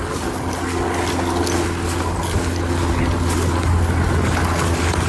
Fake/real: real